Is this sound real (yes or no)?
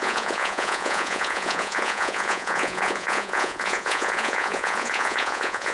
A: no